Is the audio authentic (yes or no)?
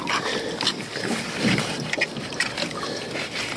yes